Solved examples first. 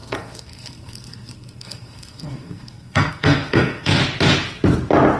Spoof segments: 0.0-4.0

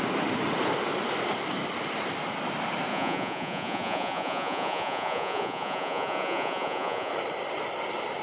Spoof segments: 2.9-7.1

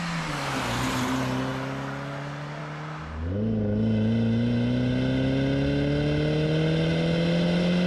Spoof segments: none

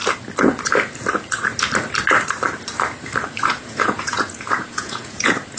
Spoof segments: 3.4-5.6

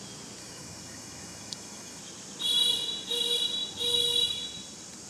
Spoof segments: 0.4-2.0

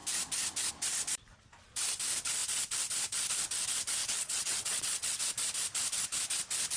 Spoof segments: 4.0-5.3

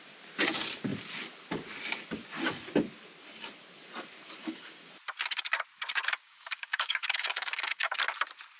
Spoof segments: 4.4-4.9; 6.2-7.9